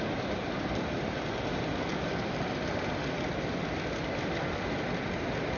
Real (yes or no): yes